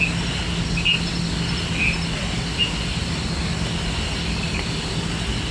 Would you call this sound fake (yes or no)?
no